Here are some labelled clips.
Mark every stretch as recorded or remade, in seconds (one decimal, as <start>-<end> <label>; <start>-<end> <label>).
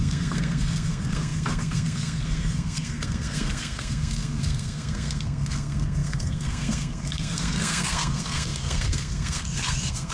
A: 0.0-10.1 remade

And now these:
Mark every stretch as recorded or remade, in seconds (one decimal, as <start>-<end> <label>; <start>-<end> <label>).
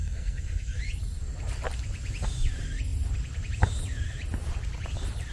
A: 0.0-0.8 remade; 0.8-5.3 recorded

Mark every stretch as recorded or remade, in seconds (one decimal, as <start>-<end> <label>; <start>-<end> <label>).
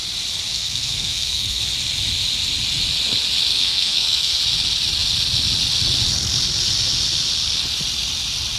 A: 0.0-0.5 recorded; 0.5-1.6 remade; 1.6-3.5 recorded; 3.5-4.4 remade; 4.4-8.6 recorded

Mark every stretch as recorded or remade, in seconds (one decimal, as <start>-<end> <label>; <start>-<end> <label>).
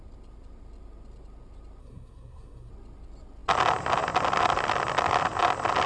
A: 0.0-1.8 recorded; 1.8-2.7 remade; 2.7-5.9 recorded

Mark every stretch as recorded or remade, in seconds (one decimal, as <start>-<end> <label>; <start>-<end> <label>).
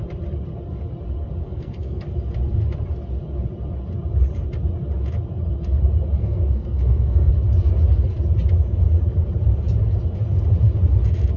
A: 0.0-1.4 recorded; 1.4-2.0 remade; 2.0-6.2 recorded; 6.2-7.3 remade; 7.3-11.4 recorded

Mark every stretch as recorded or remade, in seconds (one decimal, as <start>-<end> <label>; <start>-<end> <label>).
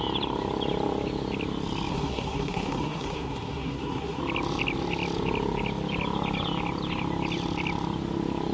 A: 0.0-1.9 recorded; 1.9-4.2 remade; 4.2-8.5 recorded